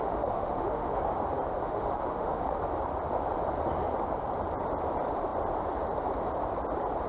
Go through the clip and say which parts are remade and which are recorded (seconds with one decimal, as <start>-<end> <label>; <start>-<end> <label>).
0.0-1.0 remade; 1.0-1.6 recorded; 1.6-2.6 remade; 2.6-7.1 recorded